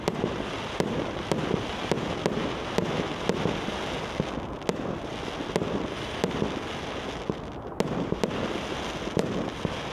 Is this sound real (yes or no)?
yes